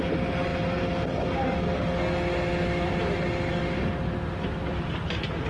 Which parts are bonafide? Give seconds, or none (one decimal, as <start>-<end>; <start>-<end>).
0.0-5.5